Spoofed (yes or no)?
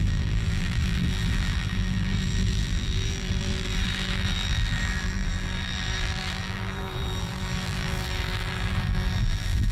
yes